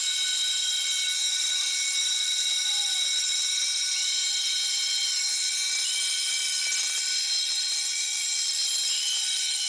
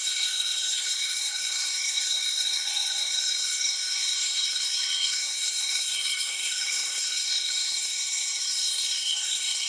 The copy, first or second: second